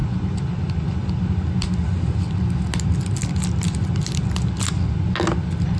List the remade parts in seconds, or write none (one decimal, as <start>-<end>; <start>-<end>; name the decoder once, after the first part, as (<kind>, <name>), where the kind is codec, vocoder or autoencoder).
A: none